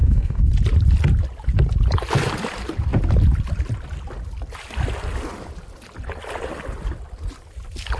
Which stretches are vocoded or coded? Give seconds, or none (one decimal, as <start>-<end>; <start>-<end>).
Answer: 0.0-0.5